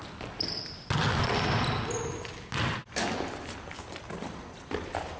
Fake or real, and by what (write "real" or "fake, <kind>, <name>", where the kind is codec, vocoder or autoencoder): real